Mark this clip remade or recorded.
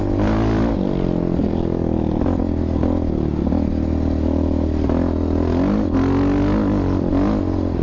recorded